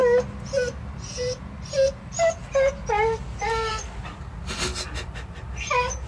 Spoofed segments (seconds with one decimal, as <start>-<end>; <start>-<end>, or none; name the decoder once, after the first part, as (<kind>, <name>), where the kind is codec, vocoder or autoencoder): 3.7-4.7 (vocoder, BigVGAN v2); 5.5-6.1